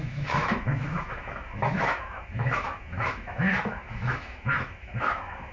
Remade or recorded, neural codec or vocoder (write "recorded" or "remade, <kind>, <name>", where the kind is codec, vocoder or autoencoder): remade, autoencoder, DAC-VAE